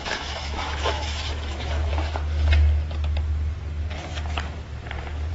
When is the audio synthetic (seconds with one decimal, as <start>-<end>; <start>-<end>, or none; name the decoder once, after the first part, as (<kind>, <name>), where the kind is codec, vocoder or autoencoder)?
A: 0.0-1.9 (autoencoder, DAC-VAE)